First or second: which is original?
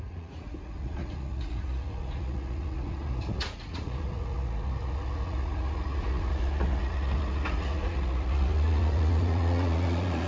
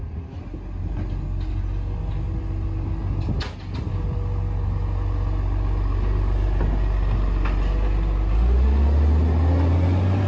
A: second